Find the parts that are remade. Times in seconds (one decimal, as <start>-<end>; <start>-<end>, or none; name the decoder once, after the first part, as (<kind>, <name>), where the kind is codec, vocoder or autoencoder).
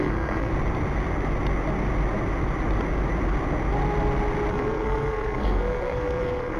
0.0-0.5 (codec, SNAC); 4.5-6.6